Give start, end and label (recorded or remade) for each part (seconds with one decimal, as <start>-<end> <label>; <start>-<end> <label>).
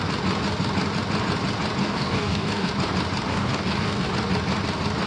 0.0-1.8 recorded; 1.8-2.7 remade; 2.7-3.3 recorded; 3.3-4.1 remade; 4.1-5.1 recorded